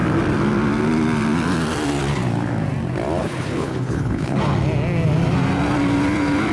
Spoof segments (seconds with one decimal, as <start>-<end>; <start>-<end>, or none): 3.2-4.4